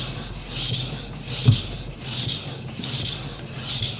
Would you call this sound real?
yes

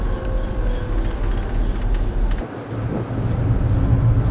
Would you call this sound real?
yes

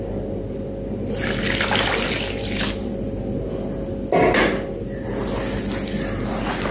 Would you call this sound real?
yes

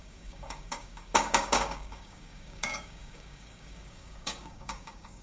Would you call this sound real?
no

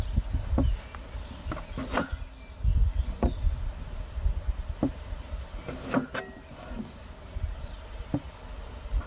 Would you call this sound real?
yes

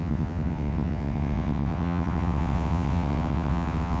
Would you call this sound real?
no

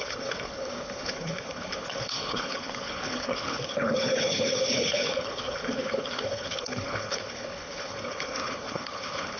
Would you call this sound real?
no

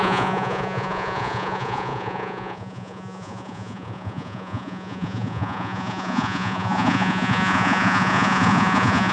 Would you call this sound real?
no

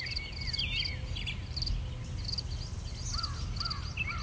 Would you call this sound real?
yes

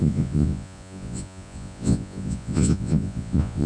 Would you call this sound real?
no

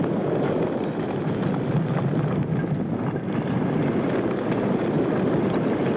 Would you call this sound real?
yes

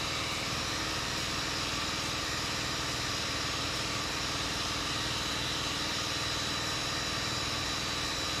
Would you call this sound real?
yes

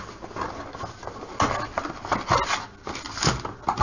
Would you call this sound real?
yes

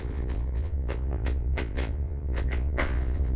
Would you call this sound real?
no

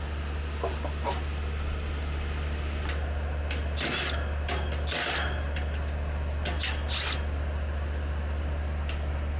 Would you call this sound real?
yes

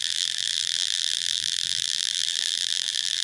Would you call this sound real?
no